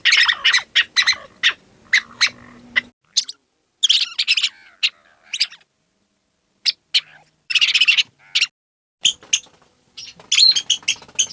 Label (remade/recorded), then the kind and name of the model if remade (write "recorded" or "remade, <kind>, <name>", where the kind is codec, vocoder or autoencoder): recorded